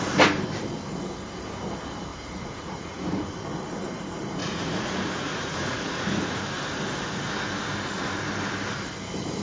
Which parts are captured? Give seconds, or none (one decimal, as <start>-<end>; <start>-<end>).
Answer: 0.0-2.1; 3.3-4.4; 6.4-9.4